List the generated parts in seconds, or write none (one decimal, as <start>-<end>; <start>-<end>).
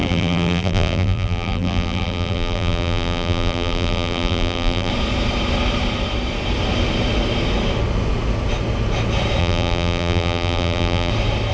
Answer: 0.0-4.9; 9.4-11.1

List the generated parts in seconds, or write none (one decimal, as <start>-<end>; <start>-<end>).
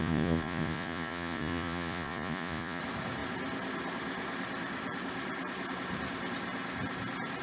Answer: 0.0-2.8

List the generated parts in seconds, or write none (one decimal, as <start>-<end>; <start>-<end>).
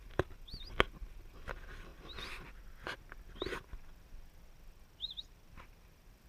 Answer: none